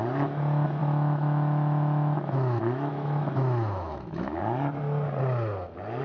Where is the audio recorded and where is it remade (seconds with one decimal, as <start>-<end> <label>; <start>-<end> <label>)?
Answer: 0.0-0.8 recorded; 0.8-4.4 remade; 4.4-6.0 recorded